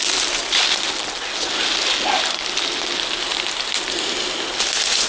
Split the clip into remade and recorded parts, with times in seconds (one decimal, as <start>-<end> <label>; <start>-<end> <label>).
0.0-5.1 recorded